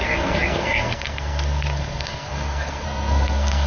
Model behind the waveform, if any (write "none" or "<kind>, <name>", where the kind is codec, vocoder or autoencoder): codec, SNAC